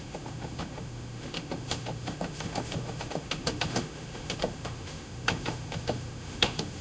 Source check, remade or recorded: remade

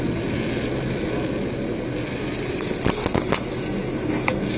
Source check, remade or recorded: recorded